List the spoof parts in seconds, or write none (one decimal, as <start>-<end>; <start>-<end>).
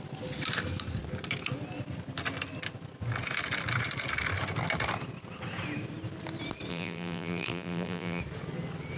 6.7-8.2